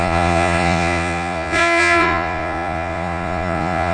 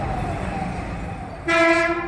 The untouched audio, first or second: second